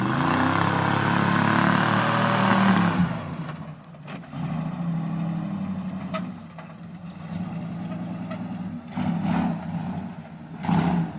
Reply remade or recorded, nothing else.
recorded